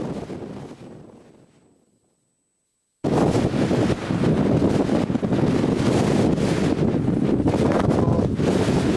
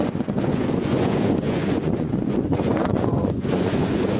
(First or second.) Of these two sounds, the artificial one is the second